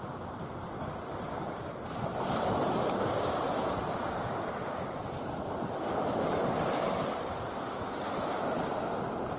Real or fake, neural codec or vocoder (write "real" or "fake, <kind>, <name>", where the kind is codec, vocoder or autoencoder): real